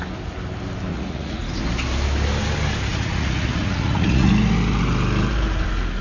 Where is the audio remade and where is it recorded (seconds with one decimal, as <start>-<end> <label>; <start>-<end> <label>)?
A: 0.0-0.9 recorded; 0.9-1.4 remade; 1.4-2.9 recorded; 2.9-4.3 remade; 4.3-6.0 recorded